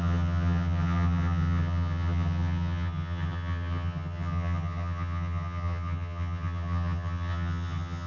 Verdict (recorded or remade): remade